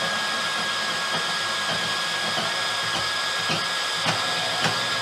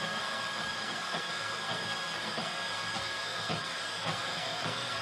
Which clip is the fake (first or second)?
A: second